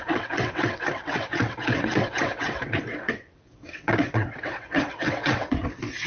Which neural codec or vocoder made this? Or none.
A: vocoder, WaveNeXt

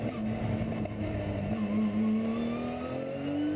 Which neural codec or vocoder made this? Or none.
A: none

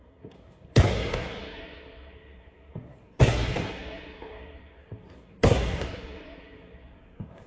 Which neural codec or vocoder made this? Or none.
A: codec, SNAC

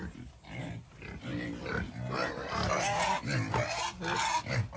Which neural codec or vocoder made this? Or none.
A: none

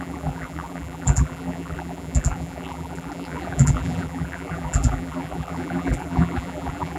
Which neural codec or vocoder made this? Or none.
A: vocoder, BigVGAN v2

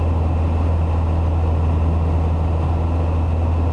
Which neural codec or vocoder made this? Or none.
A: none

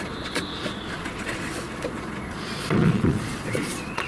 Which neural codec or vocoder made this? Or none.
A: vocoder, Vocos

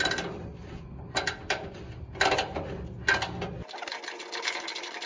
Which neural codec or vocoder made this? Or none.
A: none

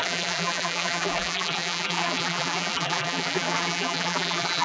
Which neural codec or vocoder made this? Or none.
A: vocoder, BigVGAN v2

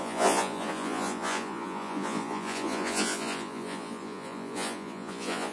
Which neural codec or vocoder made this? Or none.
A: vocoder, Vocos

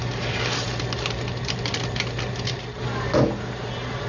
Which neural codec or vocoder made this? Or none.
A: none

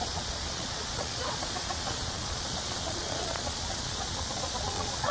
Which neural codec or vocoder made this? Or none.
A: vocoder, Vocos